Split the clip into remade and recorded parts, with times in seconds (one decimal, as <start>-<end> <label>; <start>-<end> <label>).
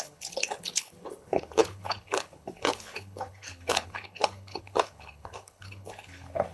0.0-6.5 remade